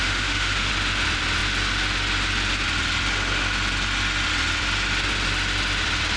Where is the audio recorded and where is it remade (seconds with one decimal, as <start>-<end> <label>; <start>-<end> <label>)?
0.0-0.7 remade; 0.7-6.2 recorded